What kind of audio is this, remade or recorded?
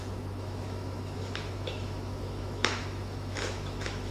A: remade